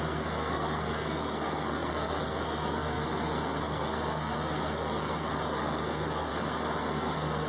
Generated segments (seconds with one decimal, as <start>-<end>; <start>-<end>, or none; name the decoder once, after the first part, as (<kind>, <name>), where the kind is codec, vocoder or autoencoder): 0.0-7.5 (codec, SNAC)